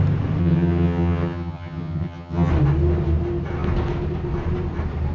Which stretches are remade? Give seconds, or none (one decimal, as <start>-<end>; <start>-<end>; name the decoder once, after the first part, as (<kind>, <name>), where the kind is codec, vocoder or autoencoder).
0.4-2.5 (vocoder, HiFi-GAN)